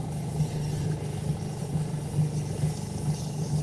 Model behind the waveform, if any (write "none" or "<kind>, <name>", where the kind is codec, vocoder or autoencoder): none